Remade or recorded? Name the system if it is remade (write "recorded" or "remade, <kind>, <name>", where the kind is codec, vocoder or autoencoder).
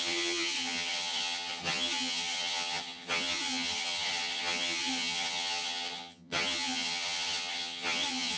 remade, vocoder, HiFi-GAN